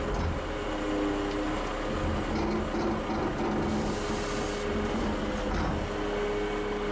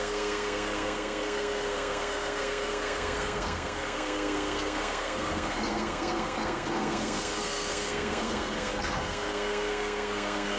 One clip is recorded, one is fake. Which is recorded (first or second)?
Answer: first